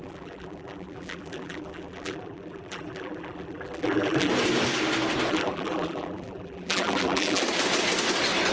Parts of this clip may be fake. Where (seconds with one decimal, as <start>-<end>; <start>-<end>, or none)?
0.0-4.3; 5.3-7.4